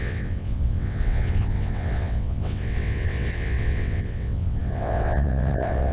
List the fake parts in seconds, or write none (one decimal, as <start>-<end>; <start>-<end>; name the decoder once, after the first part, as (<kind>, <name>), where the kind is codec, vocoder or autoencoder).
0.0-5.9 (vocoder, WaveNeXt)